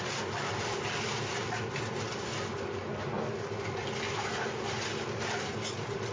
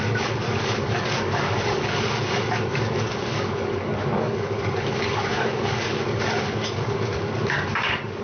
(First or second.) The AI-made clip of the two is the second